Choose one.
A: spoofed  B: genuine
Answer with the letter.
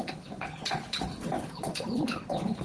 A